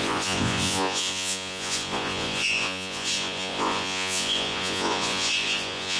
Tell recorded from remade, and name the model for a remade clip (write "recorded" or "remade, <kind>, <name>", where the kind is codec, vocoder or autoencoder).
remade, vocoder, Vocos